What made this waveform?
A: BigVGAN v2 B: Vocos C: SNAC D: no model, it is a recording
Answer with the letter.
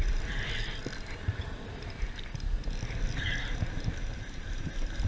D